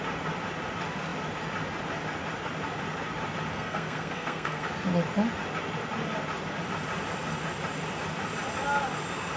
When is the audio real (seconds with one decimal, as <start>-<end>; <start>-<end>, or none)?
0.0-3.5; 4.7-9.4

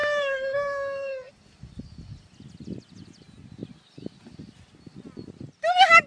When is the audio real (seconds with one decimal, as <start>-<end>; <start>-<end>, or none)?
1.3-6.1

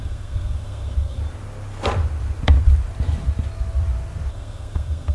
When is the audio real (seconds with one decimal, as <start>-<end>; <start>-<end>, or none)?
1.2-4.3